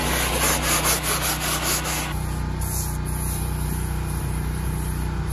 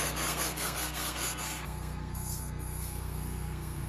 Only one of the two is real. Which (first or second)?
first